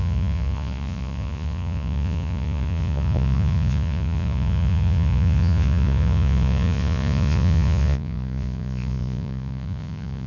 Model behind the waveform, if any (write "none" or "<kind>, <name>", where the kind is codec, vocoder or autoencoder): vocoder, Vocos